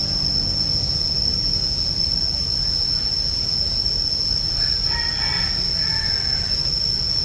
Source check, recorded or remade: recorded